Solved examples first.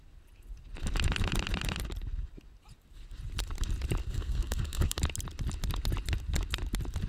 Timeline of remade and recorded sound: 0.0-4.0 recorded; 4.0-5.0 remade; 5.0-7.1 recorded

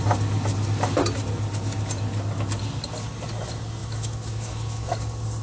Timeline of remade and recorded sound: 0.0-3.8 recorded; 3.8-4.9 remade; 4.9-5.4 recorded

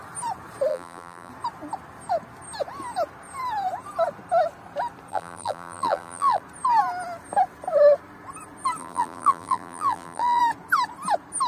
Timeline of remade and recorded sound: 0.0-0.7 recorded; 0.7-1.3 remade; 1.3-5.1 recorded; 5.1-6.4 remade; 6.4-8.8 recorded; 8.8-10.4 remade; 10.4-11.5 recorded

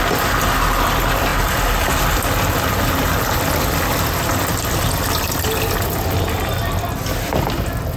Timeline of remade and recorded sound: 0.0-8.0 recorded

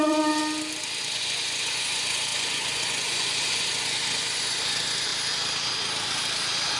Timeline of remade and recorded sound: 0.0-0.4 remade; 0.4-1.0 recorded; 1.0-5.1 remade; 5.1-6.8 recorded

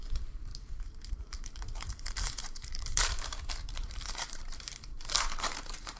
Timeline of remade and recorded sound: 0.0-0.5 remade; 0.5-1.1 recorded; 1.1-6.0 remade